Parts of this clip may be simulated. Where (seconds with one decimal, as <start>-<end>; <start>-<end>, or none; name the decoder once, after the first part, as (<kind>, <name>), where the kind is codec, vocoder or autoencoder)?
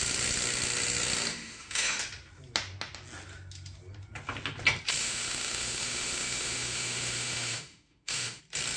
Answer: 1.3-2.0 (autoencoder, DAC-VAE); 5.0-8.4